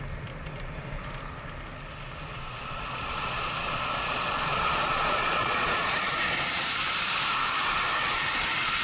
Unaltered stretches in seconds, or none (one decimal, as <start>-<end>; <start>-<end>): 0.0-2.3; 6.9-8.8